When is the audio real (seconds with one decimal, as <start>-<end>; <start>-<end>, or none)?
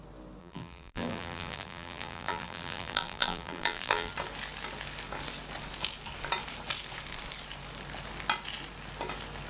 0.0-0.4; 4.1-9.5